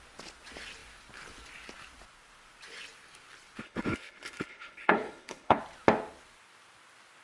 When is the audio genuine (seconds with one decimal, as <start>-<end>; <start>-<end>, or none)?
0.0-3.6; 5.6-7.2